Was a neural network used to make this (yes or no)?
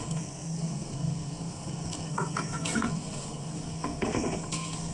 yes